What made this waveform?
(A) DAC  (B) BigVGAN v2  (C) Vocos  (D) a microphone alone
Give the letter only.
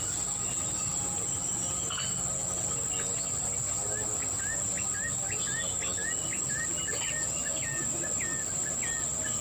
D